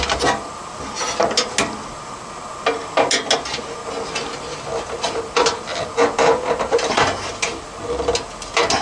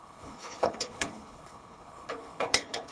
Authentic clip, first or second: first